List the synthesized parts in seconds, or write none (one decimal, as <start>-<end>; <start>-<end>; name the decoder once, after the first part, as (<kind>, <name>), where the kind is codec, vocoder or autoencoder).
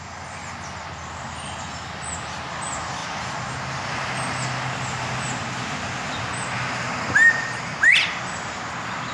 none